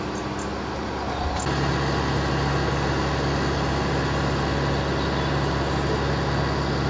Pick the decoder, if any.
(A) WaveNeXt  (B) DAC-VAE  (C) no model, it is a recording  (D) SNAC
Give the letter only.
C